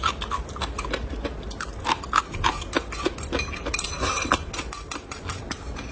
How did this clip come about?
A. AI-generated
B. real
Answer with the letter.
B